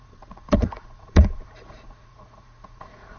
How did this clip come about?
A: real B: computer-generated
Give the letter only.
B